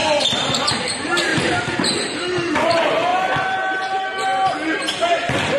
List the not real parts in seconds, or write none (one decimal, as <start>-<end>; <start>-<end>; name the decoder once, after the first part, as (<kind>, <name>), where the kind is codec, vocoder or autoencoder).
1.3-1.9 (vocoder, BigVGAN v2)